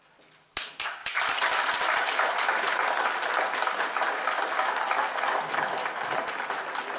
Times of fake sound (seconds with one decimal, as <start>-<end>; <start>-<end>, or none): 1.0-2.9